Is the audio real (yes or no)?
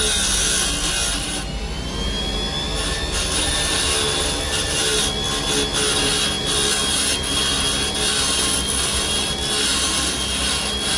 yes